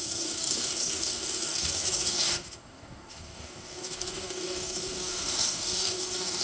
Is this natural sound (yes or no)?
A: no